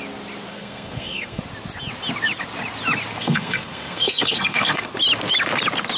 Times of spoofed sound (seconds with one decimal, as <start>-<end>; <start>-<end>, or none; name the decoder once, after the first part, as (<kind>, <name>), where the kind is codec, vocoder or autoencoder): 0.5-1.4 (codec, SNAC); 3.2-4.9